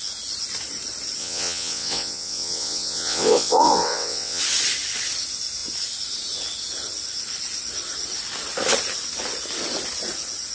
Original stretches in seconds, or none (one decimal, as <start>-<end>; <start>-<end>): 0.0-1.2; 4.4-10.5